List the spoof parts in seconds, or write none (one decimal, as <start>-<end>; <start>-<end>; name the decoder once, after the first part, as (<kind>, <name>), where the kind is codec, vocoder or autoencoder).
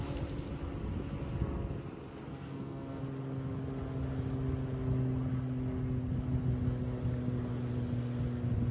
2.3-3.0 (codec, SNAC)